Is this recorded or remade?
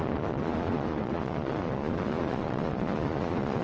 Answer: remade